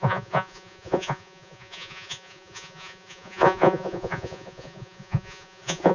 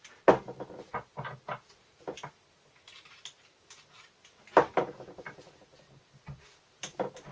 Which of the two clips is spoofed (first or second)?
first